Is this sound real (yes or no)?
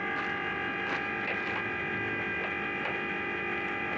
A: yes